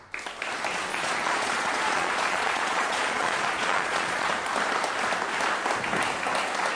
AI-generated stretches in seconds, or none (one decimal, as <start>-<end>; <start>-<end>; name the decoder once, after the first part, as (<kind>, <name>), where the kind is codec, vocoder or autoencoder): 0.9-4.3 (vocoder, Vocos)